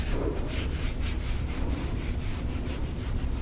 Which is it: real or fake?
fake